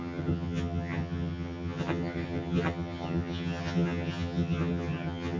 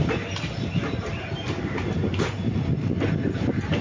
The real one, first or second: second